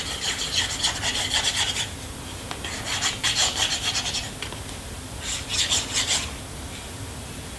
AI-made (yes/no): no